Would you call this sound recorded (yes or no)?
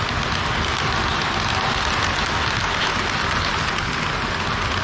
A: yes